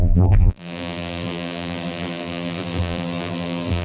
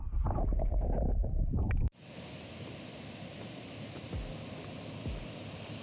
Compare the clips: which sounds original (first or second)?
second